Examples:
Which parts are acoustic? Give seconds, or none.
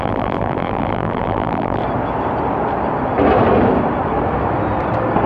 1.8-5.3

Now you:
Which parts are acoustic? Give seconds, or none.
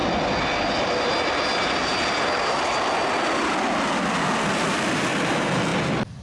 0.0-6.2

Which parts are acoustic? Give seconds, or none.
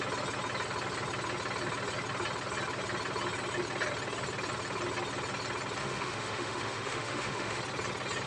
0.0-5.8; 7.6-8.3